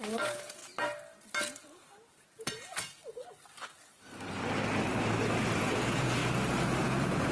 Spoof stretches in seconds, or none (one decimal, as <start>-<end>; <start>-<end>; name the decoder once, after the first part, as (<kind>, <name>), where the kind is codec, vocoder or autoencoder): 0.0-0.6 (vocoder, Vocos); 2.4-3.0; 5.6-6.2; 6.8-7.3